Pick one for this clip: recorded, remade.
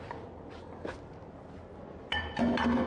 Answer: recorded